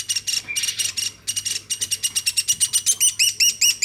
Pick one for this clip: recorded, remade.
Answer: recorded